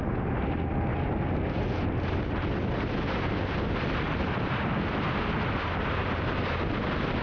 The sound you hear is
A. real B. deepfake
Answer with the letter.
A